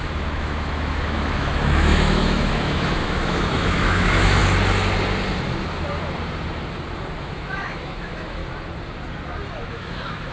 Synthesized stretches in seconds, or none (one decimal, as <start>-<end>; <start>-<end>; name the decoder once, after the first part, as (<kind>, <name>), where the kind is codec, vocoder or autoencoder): 0.0-4.4 (autoencoder, DAC-VAE); 7.2-8.4; 9.7-10.3

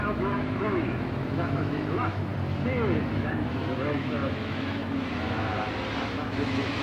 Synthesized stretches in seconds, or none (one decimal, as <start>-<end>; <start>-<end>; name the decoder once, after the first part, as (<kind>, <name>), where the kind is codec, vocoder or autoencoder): 0.0-2.3 (autoencoder, DAC-VAE); 3.1-5.5; 6.1-6.8